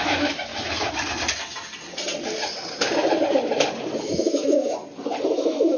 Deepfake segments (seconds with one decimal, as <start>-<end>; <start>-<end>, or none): 0.0-0.5; 4.0-4.8; 5.3-5.8